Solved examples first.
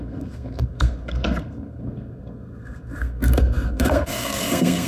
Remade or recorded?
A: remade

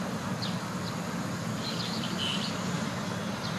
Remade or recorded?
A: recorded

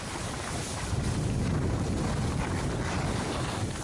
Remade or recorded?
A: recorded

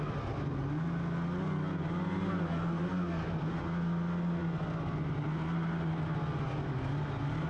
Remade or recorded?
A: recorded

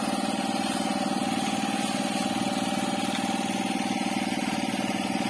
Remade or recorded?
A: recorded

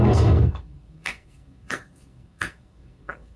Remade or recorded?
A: remade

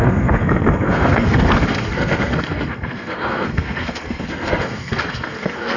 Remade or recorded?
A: remade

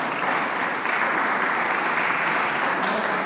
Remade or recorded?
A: recorded